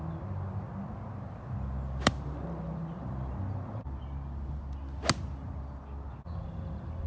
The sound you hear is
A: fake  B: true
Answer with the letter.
B